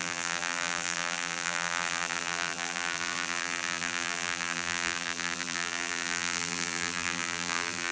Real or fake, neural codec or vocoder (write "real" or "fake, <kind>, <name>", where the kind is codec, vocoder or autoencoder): fake, vocoder, BigVGAN v2